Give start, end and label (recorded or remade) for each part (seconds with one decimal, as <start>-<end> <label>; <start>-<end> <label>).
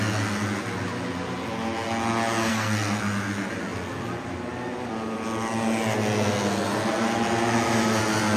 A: 0.0-2.5 recorded; 2.5-3.0 remade; 3.0-8.4 recorded